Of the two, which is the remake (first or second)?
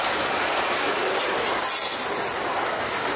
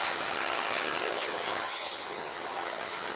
second